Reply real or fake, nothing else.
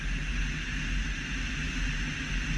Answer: real